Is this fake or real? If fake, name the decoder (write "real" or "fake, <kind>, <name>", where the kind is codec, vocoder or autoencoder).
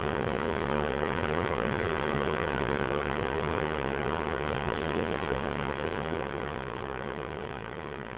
fake, vocoder, Vocos